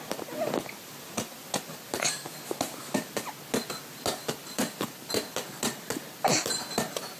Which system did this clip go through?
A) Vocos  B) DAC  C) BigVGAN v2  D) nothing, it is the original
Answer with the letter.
D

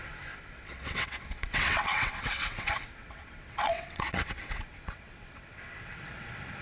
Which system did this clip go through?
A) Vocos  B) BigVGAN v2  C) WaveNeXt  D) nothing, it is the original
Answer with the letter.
C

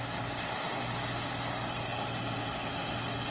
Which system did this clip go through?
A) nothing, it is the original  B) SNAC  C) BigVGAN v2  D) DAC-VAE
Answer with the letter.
A